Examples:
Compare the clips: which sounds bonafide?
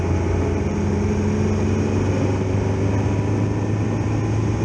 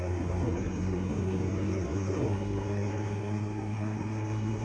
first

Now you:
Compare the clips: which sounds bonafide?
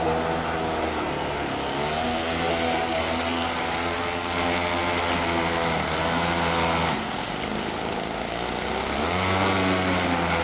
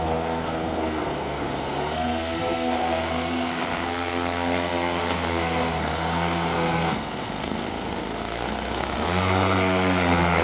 first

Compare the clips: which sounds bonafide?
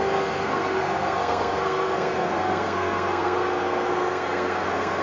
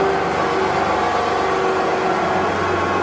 second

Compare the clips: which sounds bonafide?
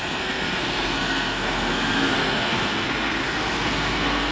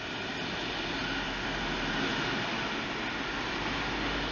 second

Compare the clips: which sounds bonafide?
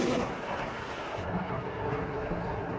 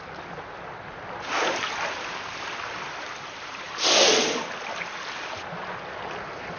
second